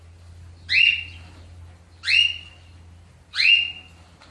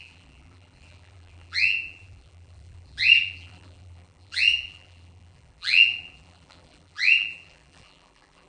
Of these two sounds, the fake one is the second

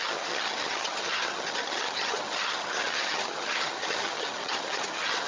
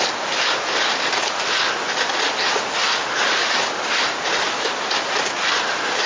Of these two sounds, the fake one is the first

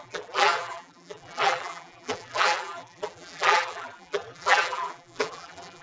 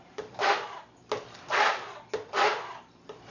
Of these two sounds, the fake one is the first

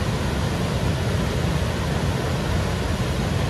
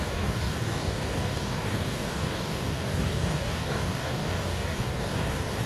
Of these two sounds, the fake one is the second